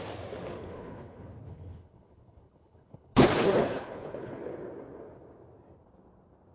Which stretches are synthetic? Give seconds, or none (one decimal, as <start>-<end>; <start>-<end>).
0.5-4.4